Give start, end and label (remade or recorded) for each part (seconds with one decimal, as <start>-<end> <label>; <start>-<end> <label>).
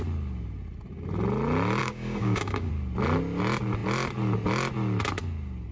0.0-1.8 recorded; 1.8-2.7 remade; 2.7-5.7 recorded